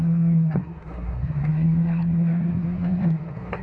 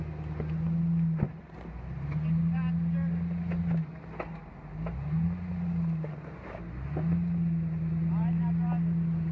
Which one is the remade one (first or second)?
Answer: first